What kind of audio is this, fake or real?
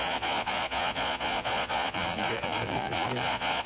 fake